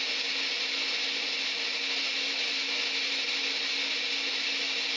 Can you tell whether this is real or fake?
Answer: real